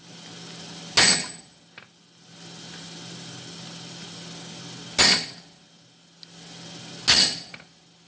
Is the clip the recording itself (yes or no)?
yes